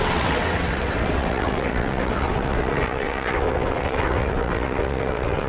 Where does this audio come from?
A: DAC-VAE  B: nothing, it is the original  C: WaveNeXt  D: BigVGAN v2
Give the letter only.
C